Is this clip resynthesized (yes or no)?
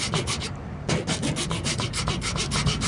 no